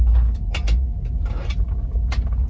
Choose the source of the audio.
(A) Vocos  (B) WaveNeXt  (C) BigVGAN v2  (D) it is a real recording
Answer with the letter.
D